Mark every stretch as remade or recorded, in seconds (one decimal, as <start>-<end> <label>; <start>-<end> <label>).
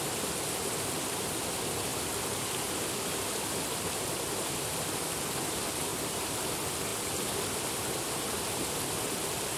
0.0-5.9 recorded; 5.9-6.5 remade; 6.5-9.6 recorded